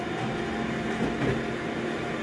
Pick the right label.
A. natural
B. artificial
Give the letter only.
A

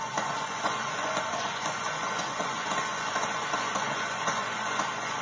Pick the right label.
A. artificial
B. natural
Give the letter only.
A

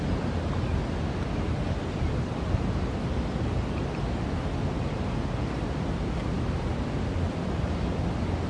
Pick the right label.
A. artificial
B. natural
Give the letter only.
B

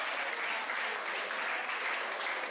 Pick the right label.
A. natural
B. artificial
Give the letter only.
A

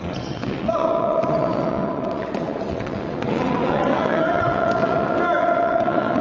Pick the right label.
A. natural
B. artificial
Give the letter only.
B